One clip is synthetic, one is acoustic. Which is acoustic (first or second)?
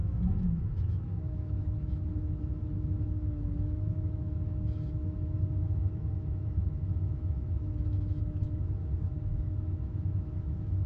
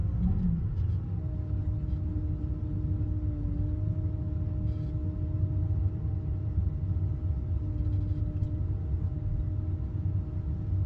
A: second